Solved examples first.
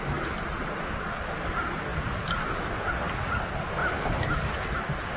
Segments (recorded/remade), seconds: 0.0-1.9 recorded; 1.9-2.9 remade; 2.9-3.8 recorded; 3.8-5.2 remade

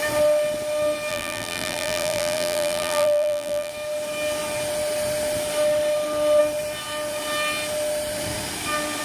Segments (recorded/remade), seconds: 0.0-1.1 recorded; 1.1-3.7 remade; 3.7-9.0 recorded

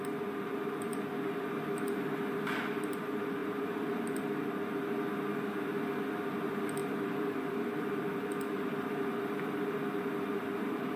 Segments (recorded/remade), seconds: 0.0-3.4 recorded; 3.4-3.9 remade; 3.9-6.8 recorded; 6.8-11.0 remade

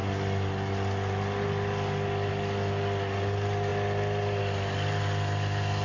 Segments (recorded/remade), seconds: 0.0-5.8 recorded

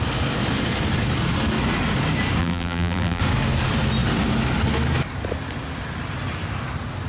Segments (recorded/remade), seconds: 0.0-2.4 recorded; 2.4-3.2 remade; 3.2-7.1 recorded

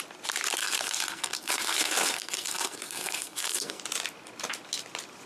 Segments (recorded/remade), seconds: 0.0-0.6 recorded; 0.6-3.8 remade; 3.8-5.3 recorded

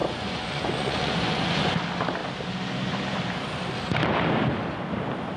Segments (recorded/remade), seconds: 0.0-1.7 remade; 1.7-5.4 recorded

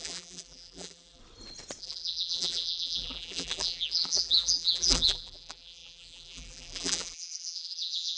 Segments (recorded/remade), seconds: 0.0-1.2 remade; 1.2-1.8 recorded; 1.8-8.2 remade